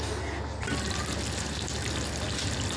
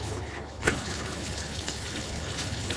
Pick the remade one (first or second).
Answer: second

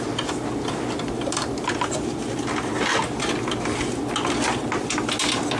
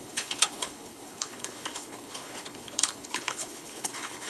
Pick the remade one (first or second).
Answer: second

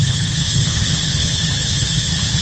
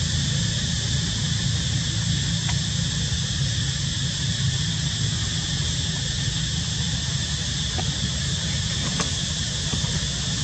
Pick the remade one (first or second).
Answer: first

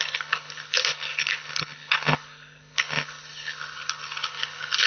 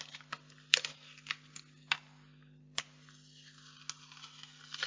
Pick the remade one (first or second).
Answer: first